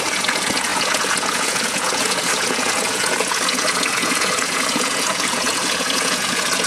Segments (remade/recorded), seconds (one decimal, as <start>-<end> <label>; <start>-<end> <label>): 0.0-6.7 remade